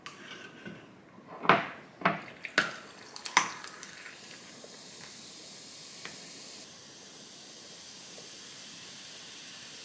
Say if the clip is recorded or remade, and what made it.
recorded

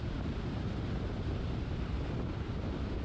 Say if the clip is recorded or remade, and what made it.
remade, vocoder, BigVGAN v2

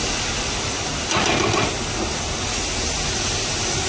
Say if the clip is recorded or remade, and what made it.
recorded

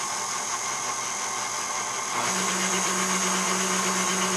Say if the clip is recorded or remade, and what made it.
recorded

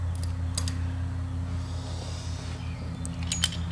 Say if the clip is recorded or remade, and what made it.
recorded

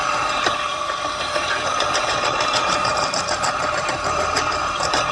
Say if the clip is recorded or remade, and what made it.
remade, vocoder, BigVGAN v2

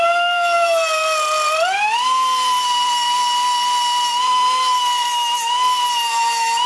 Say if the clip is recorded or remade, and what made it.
remade, vocoder, BigVGAN v2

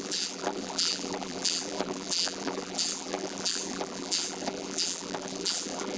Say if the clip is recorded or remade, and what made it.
remade, vocoder, BigVGAN v2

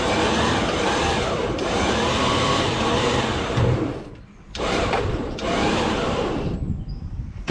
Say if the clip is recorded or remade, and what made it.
remade, vocoder, BigVGAN v2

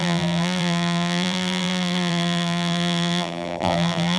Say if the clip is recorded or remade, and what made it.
remade, vocoder, BigVGAN v2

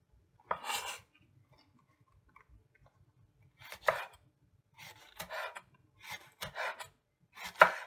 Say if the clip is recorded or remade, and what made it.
recorded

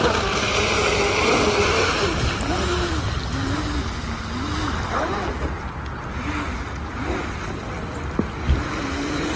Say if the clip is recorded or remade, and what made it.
recorded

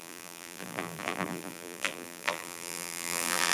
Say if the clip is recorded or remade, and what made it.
remade, vocoder, BigVGAN v2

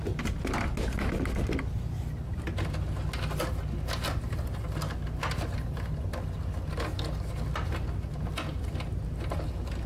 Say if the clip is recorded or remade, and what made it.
recorded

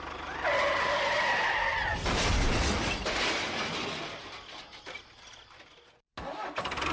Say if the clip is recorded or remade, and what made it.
recorded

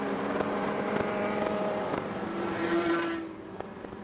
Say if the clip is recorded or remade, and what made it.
remade, vocoder, BigVGAN v2